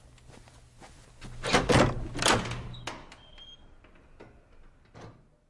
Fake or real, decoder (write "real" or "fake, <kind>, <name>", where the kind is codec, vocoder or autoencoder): real